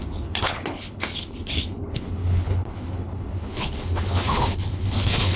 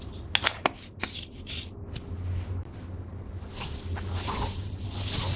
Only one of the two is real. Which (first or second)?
second